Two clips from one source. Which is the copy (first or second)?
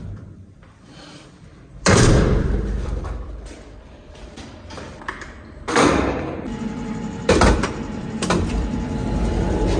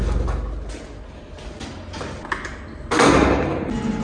first